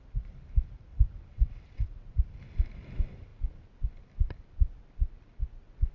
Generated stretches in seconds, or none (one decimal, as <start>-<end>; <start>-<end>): 0.9-2.1